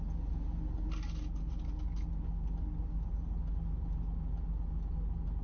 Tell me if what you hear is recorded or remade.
recorded